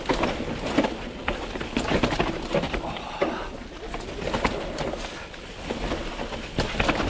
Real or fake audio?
real